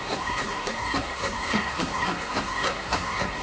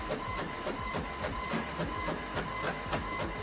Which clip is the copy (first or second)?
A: first